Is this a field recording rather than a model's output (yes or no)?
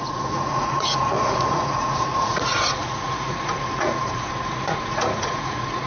no